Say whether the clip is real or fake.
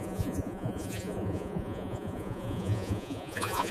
fake